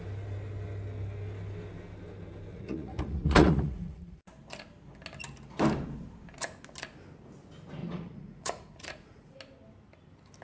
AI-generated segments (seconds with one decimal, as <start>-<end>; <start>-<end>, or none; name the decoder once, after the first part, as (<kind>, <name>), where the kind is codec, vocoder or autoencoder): 2.5-4.3 (vocoder, Vocos); 7.8-9.3